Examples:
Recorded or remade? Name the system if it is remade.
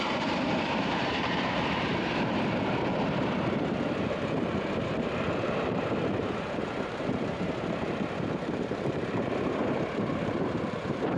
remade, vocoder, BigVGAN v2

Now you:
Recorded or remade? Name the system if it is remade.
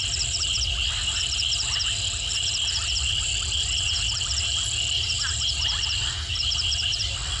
recorded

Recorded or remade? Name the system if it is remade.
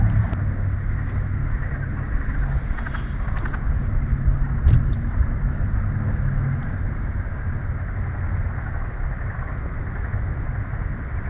recorded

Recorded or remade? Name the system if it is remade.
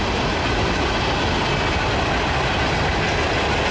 recorded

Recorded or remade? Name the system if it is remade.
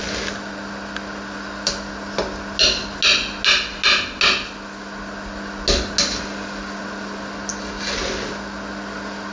recorded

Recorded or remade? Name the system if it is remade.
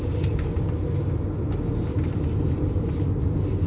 recorded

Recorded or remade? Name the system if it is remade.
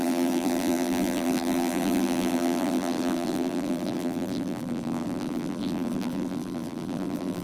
remade, vocoder, BigVGAN v2